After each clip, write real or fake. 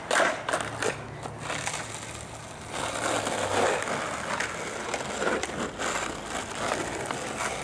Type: real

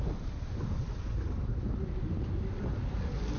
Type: real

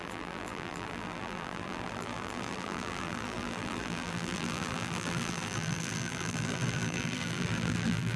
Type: fake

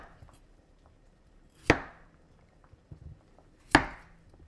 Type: real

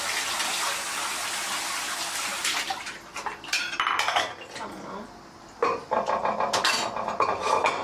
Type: real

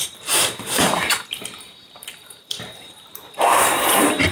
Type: fake